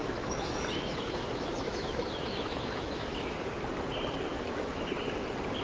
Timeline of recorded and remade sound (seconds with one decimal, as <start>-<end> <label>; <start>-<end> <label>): 0.0-3.4 remade; 3.4-4.3 recorded; 4.3-4.9 remade; 4.9-5.6 recorded